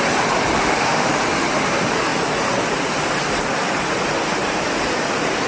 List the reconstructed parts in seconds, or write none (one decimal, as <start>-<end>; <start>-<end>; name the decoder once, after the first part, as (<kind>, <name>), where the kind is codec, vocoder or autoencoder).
0.6-1.1 (autoencoder, DAC-VAE)